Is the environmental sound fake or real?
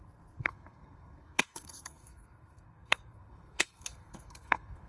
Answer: fake